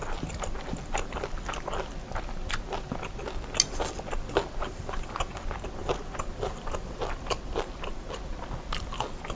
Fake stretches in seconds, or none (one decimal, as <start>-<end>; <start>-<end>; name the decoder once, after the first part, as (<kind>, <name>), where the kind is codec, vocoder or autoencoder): none